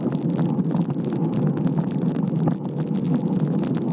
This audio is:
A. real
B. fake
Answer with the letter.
A